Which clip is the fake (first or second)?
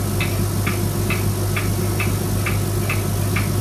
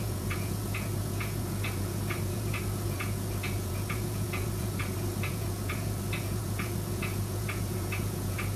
second